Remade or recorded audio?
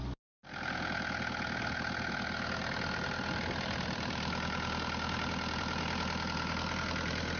recorded